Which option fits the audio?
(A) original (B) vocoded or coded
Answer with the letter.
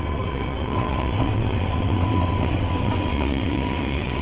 B